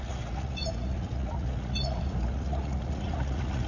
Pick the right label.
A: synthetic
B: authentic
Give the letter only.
A